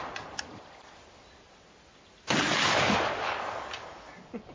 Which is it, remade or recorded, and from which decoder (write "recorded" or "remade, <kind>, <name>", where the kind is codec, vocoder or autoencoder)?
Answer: recorded